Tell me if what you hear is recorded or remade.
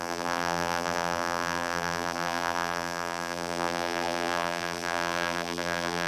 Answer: remade